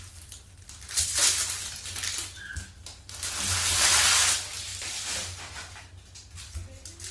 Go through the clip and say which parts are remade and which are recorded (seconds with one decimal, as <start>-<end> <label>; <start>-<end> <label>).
0.0-7.1 recorded